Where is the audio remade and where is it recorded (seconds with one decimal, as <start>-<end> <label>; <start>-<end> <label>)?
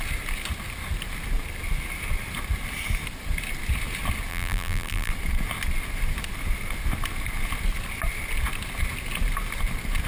0.0-4.3 recorded; 4.3-5.1 remade; 5.1-10.1 recorded